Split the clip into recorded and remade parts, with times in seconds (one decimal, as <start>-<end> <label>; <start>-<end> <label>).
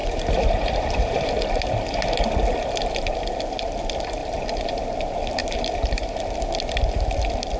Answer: 0.0-1.3 remade; 1.3-4.2 recorded; 4.2-4.8 remade; 4.8-5.4 recorded; 5.4-6.2 remade; 6.2-7.6 recorded